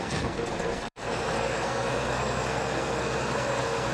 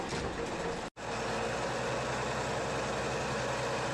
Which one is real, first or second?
second